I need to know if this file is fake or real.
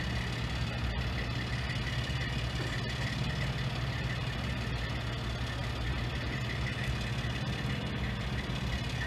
real